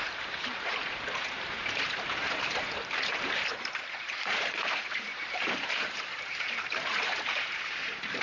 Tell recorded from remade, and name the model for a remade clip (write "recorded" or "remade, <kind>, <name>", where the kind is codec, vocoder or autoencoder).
remade, vocoder, BigVGAN v2